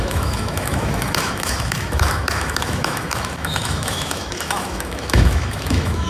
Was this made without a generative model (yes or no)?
no